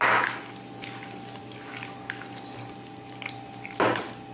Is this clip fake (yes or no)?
no